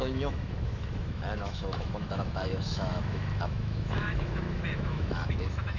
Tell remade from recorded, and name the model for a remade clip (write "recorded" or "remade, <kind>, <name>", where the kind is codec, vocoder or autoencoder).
remade, autoencoder, DAC-VAE